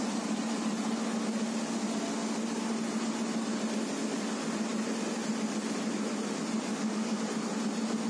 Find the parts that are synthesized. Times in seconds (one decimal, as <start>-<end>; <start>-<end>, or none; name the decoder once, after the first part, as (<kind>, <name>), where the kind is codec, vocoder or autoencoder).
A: 6.7-7.2 (codec, DAC)

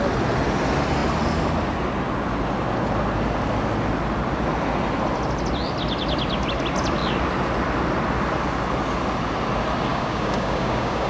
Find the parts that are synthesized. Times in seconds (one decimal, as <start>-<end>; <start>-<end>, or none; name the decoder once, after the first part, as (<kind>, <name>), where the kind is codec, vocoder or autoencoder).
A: 9.9-11.1 (codec, DAC)

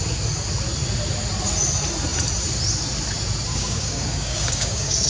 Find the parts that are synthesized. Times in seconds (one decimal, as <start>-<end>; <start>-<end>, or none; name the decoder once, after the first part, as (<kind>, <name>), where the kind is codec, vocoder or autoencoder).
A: 3.5-5.1 (codec, DAC)

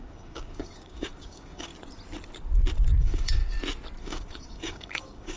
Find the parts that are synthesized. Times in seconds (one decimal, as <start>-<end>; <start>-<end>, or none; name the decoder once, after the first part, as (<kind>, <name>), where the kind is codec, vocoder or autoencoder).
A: 0.0-1.7 (codec, DAC); 3.0-3.4; 4.0-5.4

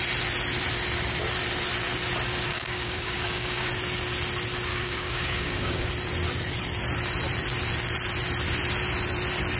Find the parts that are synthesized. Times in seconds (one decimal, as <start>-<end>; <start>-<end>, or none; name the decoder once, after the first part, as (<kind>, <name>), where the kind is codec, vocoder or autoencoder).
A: 2.5-3.7 (codec, DAC); 4.7-5.9

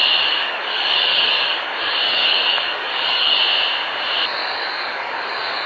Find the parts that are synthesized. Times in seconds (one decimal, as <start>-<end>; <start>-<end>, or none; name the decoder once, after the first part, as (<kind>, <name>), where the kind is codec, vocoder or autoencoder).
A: 0.0-3.4 (codec, DAC); 4.4-5.7

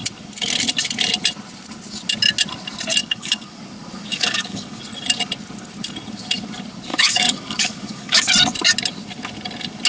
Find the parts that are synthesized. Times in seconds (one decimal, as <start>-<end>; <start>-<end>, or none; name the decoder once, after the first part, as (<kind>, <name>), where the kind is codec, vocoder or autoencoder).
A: 3.0-3.6 (codec, DAC); 4.1-4.8; 6.9-8.3